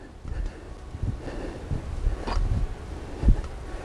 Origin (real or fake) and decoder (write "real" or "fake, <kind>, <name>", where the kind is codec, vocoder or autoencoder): real